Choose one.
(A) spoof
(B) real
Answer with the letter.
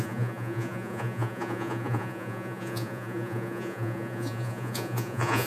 A